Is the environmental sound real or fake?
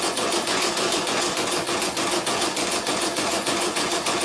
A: fake